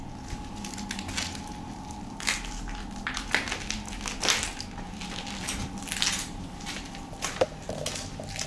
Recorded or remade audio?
recorded